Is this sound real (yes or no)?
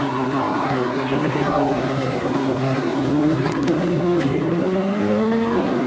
no